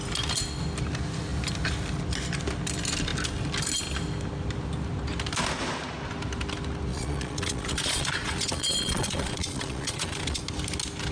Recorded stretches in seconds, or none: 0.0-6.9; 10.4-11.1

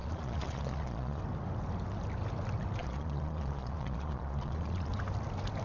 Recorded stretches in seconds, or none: 1.2-2.8; 4.9-5.6

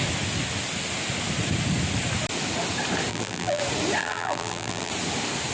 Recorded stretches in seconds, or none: 0.0-3.1; 3.6-4.0; 4.9-5.5

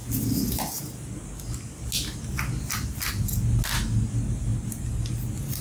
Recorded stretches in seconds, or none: 0.0-5.6

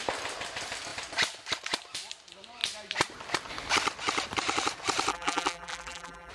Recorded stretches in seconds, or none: 0.0-5.1

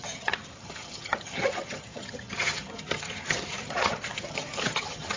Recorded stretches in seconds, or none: none

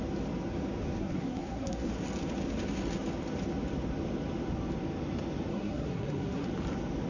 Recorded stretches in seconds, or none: 0.0-1.0; 1.9-5.5; 6.5-7.1

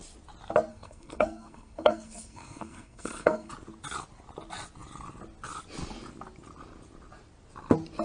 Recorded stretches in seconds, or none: 0.0-0.7; 3.5-8.0